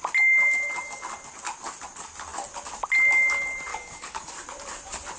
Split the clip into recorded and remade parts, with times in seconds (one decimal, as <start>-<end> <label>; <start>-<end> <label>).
0.0-3.7 recorded; 3.7-4.3 remade; 4.3-5.2 recorded